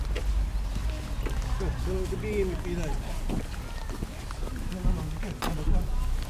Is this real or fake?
real